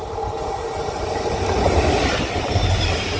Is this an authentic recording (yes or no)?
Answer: yes